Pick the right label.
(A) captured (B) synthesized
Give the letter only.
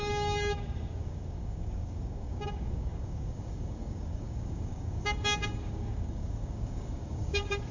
B